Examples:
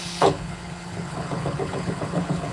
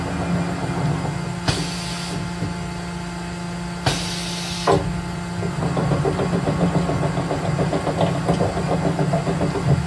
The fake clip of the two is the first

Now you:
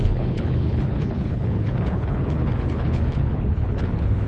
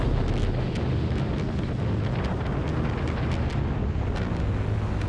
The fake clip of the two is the first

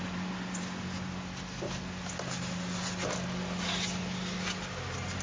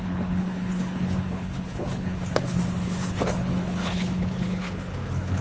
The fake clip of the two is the second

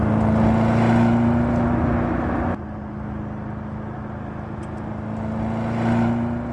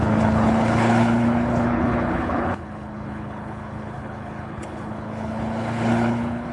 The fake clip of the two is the second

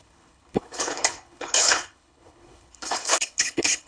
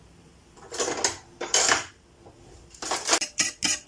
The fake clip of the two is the first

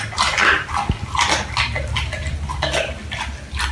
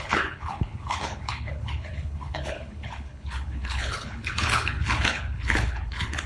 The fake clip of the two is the second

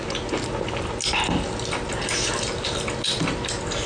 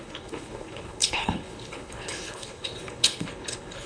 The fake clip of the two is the second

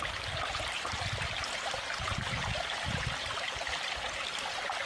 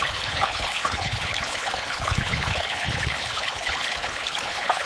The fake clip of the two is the second